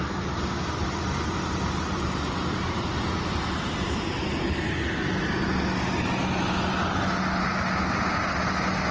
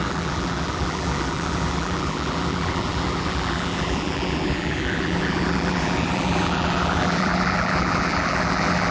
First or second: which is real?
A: first